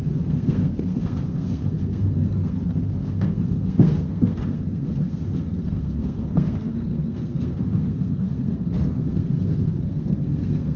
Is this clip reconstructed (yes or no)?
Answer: yes